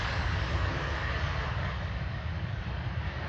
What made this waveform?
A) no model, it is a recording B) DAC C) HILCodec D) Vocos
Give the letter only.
B